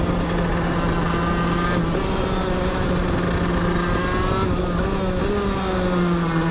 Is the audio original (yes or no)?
yes